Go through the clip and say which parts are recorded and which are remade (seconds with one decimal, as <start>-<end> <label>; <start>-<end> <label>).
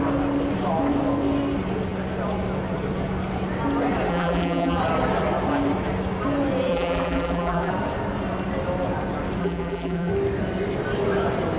0.0-4.1 recorded; 4.1-4.8 remade; 4.8-6.7 recorded; 6.7-7.7 remade; 7.7-9.4 recorded; 9.4-10.1 remade; 10.1-11.6 recorded